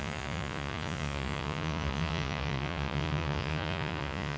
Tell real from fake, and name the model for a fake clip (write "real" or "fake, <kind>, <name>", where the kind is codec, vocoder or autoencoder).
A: fake, vocoder, Vocos